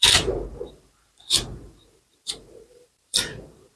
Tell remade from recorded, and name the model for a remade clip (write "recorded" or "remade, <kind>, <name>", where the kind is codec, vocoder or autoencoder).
remade, vocoder, BigVGAN v2